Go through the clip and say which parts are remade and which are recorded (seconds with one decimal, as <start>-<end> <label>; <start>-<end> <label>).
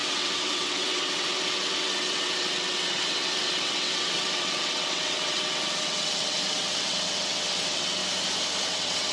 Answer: 0.0-8.0 remade; 8.0-8.6 recorded; 8.6-9.1 remade